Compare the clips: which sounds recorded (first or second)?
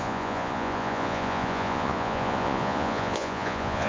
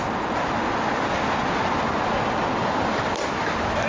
second